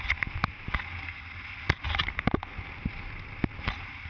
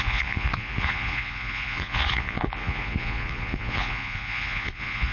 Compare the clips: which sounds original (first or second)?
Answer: first